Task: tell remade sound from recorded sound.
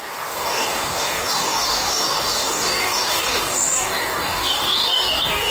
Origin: remade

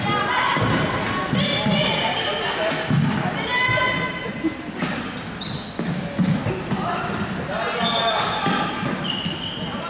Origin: recorded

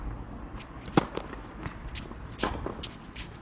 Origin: recorded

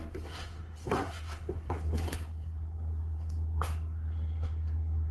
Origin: remade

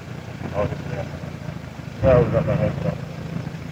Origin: recorded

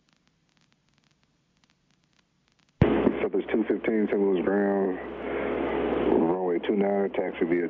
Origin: recorded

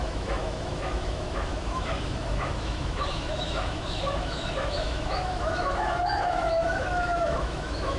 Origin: remade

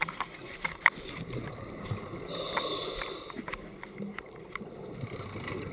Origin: recorded